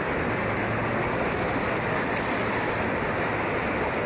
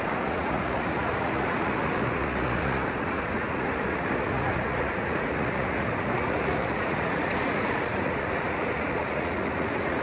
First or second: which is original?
first